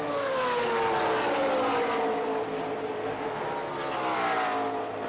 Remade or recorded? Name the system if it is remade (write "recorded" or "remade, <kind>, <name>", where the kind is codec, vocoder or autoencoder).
recorded